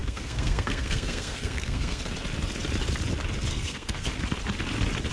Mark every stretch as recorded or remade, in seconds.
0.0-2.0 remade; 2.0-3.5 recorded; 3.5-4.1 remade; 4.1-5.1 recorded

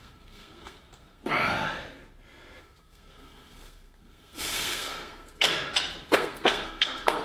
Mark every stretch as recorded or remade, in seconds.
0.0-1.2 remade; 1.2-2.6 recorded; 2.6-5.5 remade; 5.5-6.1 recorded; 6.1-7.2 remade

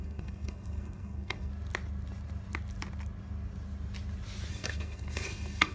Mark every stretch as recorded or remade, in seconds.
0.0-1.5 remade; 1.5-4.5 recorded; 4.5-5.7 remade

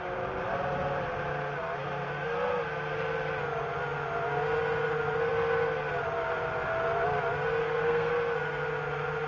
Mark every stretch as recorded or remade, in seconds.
0.0-7.6 recorded; 7.6-8.1 remade; 8.1-9.3 recorded